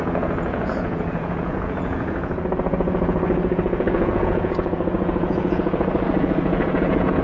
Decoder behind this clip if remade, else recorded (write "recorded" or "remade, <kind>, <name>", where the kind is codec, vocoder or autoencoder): remade, vocoder, Vocos